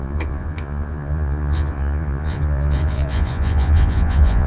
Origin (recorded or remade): remade